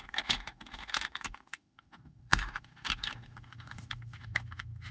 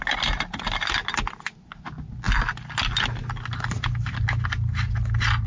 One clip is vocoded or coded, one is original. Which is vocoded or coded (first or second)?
first